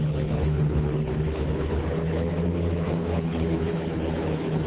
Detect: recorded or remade remade